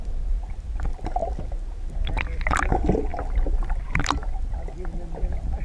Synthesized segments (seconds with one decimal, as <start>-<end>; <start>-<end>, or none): 3.1-4.0